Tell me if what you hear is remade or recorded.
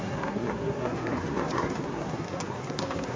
remade